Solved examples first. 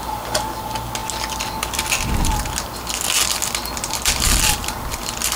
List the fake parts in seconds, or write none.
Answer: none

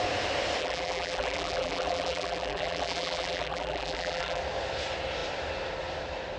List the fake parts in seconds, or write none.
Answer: 0.6-4.4

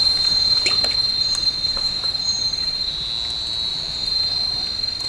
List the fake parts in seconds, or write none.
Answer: 3.7-4.3